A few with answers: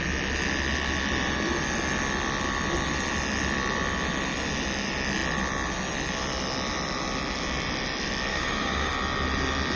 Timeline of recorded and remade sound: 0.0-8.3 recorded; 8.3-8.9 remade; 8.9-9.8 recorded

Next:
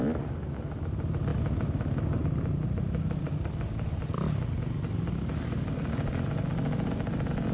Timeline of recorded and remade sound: 0.0-7.5 recorded

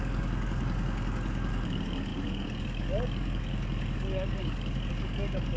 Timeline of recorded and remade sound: 0.0-5.6 remade

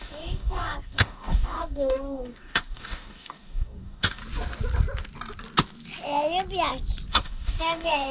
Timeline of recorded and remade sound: 0.0-4.2 remade; 4.2-7.1 recorded; 7.1-8.1 remade

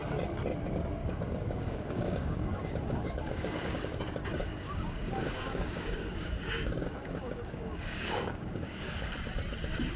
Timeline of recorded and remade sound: 0.0-1.0 recorded; 1.0-4.0 remade; 4.0-4.4 recorded; 4.4-9.1 remade; 9.1-10.0 recorded

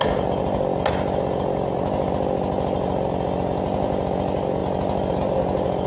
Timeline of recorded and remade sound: 0.0-5.9 recorded

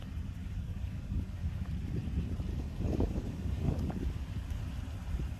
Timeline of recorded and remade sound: 0.0-0.4 recorded; 0.4-1.7 remade; 1.7-2.5 recorded; 2.5-4.6 remade; 4.6-5.4 recorded